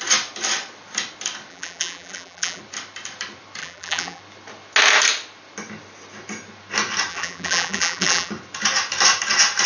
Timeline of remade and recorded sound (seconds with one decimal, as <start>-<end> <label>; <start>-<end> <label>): 0.0-1.5 recorded; 1.5-2.6 remade; 2.6-3.6 recorded; 3.6-4.2 remade; 4.2-7.1 recorded; 7.1-8.3 remade; 8.3-9.7 recorded